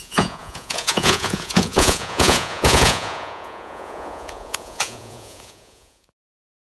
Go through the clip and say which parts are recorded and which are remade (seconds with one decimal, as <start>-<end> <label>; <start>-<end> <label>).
0.0-6.8 remade